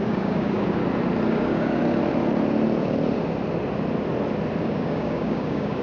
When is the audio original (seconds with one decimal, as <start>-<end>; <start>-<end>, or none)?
0.8-1.3; 1.8-4.6